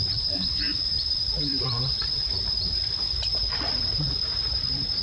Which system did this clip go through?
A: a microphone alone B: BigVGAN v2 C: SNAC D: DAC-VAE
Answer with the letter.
B